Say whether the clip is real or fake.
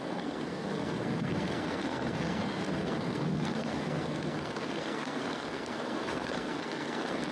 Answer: fake